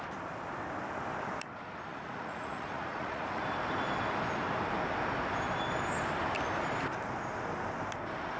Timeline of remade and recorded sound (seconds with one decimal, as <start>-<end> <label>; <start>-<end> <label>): 0.0-1.9 recorded; 1.9-3.4 remade; 3.4-8.4 recorded

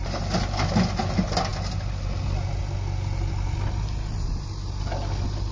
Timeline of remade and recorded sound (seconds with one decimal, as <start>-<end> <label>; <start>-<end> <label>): 0.0-5.5 recorded

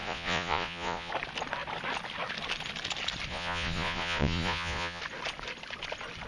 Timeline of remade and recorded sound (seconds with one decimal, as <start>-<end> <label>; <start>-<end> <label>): 0.0-1.1 remade; 1.1-3.3 recorded; 3.3-5.0 remade; 5.0-6.3 recorded

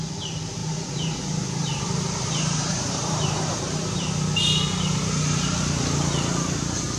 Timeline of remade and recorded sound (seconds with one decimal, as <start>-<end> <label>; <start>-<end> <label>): 0.0-0.6 recorded; 0.6-4.1 remade; 4.1-7.0 recorded

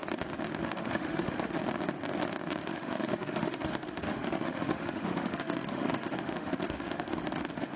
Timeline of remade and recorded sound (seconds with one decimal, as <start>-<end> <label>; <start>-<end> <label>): 0.0-0.6 recorded; 0.6-1.6 remade; 1.6-2.6 recorded; 2.6-7.8 remade